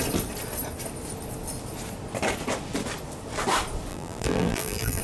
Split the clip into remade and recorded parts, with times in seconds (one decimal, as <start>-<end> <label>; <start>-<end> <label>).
0.0-3.9 recorded; 3.9-5.0 remade